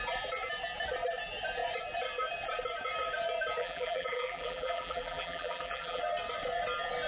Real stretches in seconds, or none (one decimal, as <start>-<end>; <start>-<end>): 0.0-3.6; 6.0-7.1